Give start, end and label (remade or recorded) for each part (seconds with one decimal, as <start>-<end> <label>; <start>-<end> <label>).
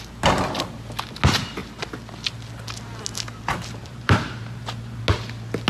0.0-3.8 recorded; 3.8-5.0 remade; 5.0-5.7 recorded